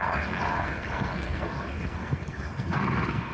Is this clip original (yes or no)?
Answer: no